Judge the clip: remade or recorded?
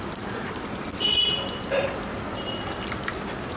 remade